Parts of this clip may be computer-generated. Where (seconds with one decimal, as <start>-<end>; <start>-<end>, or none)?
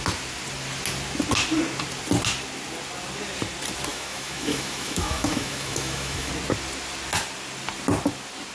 3.9-6.3